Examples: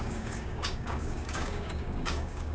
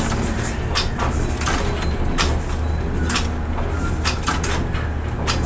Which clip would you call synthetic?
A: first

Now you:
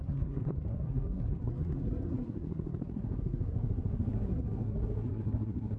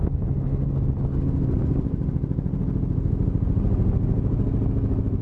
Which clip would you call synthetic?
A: first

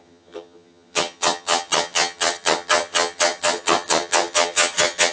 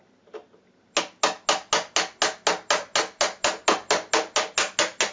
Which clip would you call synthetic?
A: first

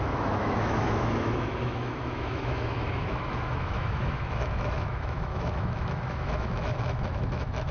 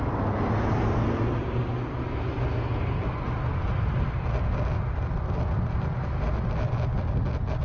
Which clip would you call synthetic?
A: first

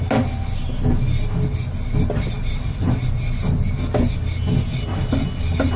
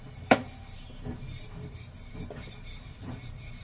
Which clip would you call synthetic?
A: second